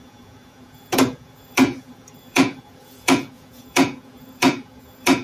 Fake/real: fake